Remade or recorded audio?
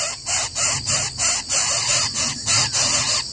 recorded